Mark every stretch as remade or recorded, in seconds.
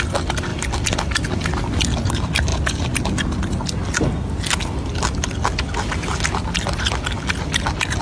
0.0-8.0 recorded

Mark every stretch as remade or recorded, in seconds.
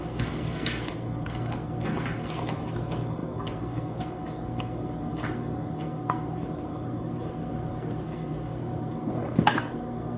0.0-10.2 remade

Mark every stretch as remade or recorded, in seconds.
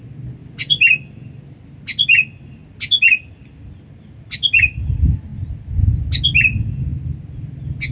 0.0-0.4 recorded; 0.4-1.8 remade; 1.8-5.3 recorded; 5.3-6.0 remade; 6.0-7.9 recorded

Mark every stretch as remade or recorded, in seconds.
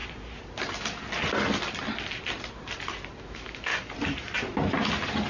0.0-3.2 recorded; 3.2-3.7 remade; 3.7-5.3 recorded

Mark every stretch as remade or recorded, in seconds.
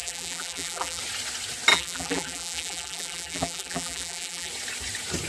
0.0-1.0 remade; 1.0-1.7 recorded; 1.7-4.5 remade; 4.5-5.3 recorded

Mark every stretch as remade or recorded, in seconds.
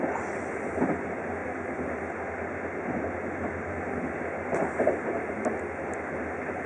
0.0-6.7 recorded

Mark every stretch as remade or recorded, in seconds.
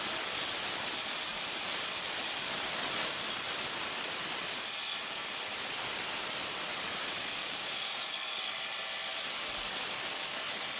0.0-7.4 recorded; 7.4-8.0 remade; 8.0-10.8 recorded